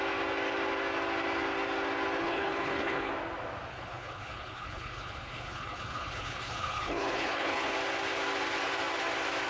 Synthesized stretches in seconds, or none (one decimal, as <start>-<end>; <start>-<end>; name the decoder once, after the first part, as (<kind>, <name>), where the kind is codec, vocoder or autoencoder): 2.2-3.1 (codec, HILCodec); 3.7-7.7